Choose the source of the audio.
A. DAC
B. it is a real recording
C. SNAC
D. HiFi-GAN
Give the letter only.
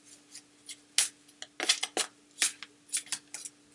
B